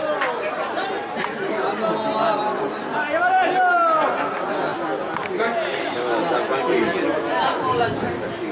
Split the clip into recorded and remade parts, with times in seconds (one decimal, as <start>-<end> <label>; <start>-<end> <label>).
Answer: 0.0-8.5 recorded